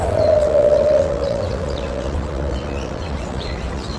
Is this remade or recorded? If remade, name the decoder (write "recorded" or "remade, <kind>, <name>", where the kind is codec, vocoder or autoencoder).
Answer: remade, vocoder, WaveNeXt